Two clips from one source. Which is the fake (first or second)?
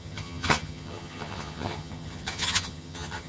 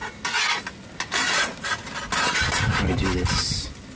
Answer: first